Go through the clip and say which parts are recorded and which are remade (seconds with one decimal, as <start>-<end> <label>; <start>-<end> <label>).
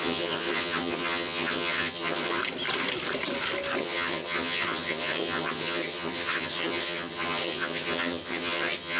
0.0-2.4 remade; 2.4-3.8 recorded; 3.8-9.0 remade